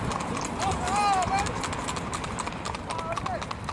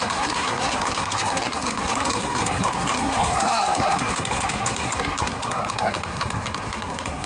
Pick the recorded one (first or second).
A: first